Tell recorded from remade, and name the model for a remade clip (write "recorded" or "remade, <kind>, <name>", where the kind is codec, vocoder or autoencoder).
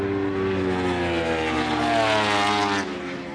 recorded